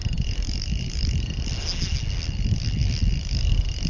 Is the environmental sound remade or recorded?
recorded